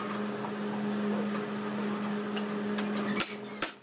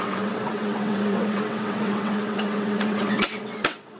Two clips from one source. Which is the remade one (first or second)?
second